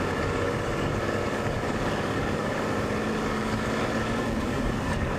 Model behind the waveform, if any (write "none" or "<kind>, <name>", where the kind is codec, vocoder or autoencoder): codec, DAC